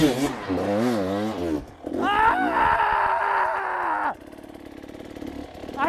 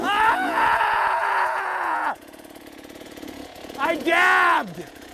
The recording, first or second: first